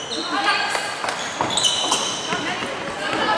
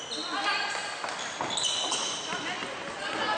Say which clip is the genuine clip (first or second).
second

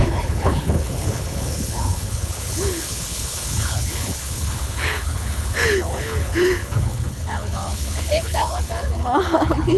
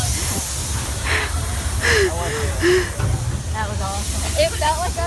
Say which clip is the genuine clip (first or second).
second